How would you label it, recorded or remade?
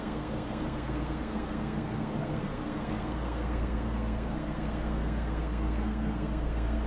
remade